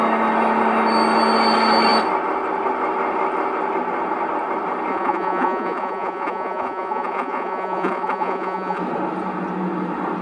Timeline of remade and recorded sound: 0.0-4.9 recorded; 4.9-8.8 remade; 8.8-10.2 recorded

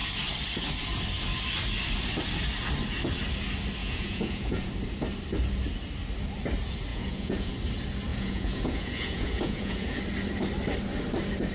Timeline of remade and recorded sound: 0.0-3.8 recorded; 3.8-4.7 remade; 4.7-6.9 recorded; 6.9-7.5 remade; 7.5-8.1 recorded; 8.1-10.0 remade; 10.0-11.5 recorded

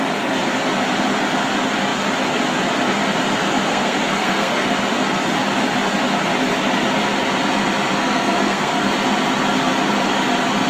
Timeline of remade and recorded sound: 0.0-3.7 recorded; 3.7-4.7 remade; 4.7-8.0 recorded; 8.0-8.8 remade; 8.8-10.7 recorded

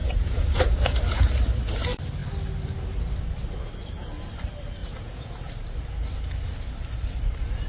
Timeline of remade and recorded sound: 0.0-1.3 remade; 1.3-4.8 recorded; 4.8-5.5 remade; 5.5-7.7 recorded

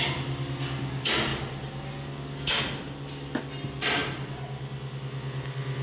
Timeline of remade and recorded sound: 0.0-5.8 recorded